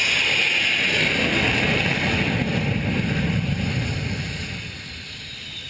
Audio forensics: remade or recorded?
recorded